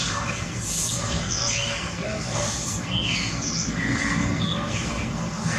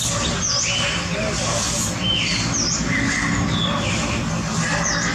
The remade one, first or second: first